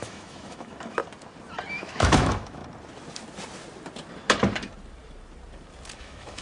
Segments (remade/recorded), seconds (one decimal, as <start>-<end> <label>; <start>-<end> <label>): 0.0-1.0 remade; 1.0-1.7 recorded; 1.7-2.6 remade; 2.6-6.0 recorded; 6.0-6.4 remade